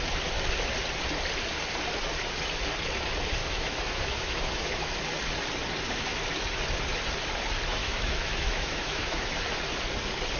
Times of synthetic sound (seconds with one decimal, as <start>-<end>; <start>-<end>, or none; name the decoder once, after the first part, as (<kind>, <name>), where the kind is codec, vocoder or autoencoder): 3.4-4.9 (autoencoder, DAC-VAE); 7.8-9.4